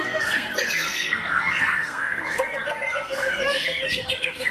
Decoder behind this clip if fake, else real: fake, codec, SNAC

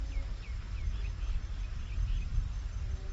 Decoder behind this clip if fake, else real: real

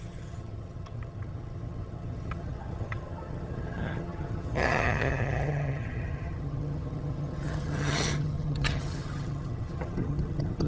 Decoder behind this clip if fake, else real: fake, vocoder, HiFi-GAN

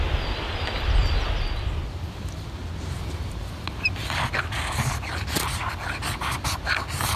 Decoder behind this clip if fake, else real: real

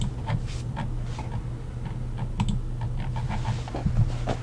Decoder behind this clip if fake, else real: real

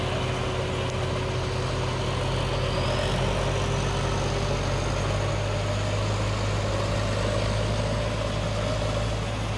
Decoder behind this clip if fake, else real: real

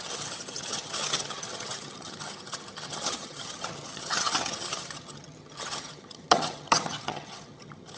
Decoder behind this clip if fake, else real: fake, vocoder, HiFi-GAN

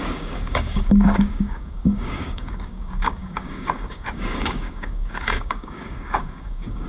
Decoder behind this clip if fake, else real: fake, codec, DAC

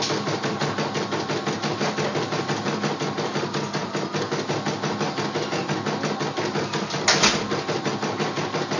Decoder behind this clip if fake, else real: real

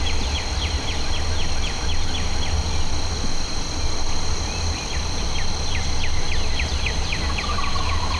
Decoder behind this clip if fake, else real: real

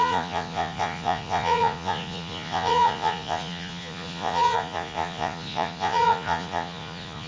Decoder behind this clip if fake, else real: fake, vocoder, Vocos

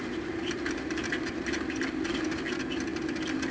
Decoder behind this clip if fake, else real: real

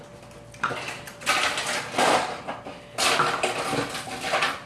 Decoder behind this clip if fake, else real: real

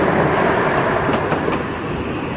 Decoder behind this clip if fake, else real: real